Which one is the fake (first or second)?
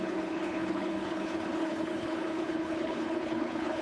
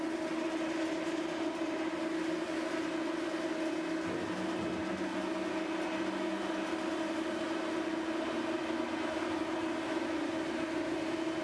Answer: first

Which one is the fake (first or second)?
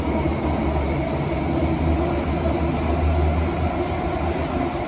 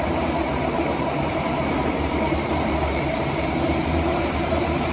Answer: second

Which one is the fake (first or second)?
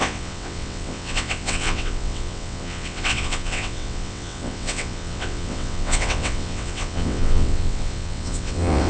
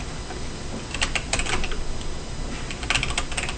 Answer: first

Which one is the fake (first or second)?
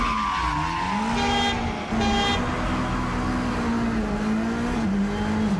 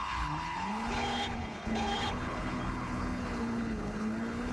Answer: second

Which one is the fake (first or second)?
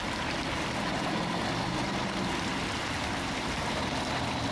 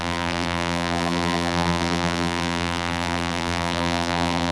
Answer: second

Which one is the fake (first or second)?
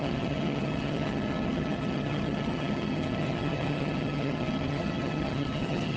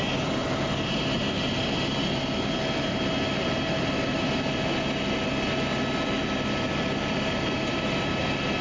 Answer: first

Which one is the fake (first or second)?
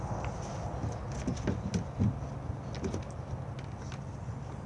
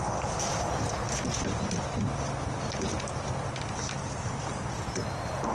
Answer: second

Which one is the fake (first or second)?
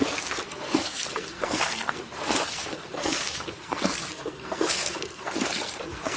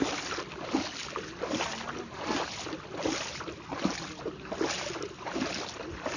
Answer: first